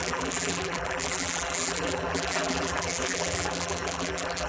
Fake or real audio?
fake